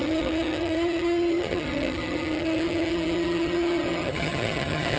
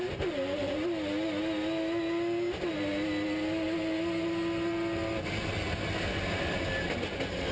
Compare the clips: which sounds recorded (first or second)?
second